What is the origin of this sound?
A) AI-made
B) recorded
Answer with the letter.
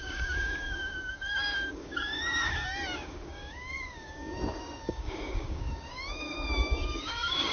A